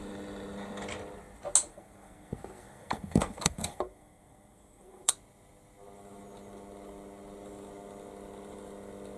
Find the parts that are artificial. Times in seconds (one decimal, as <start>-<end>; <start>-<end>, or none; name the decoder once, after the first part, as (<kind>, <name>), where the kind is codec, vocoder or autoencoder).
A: 1.7-5.1 (codec, SNAC)